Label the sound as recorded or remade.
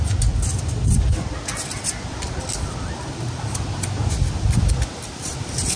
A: recorded